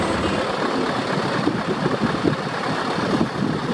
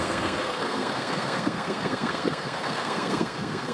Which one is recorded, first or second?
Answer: first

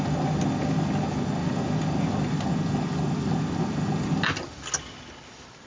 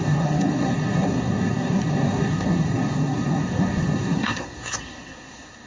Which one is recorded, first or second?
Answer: first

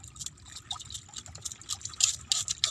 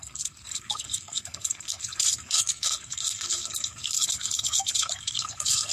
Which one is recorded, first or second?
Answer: first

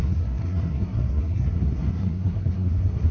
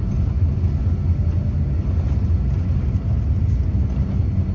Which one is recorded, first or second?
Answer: second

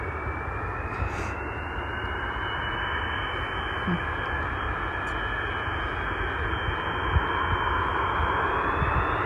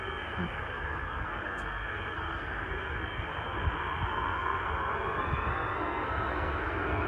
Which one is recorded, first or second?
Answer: first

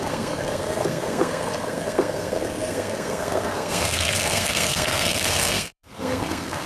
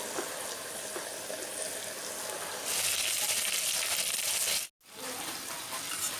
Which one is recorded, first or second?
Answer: second